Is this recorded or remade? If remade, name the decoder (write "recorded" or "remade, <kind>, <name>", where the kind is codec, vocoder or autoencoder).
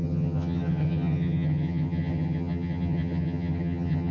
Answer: remade, vocoder, HiFi-GAN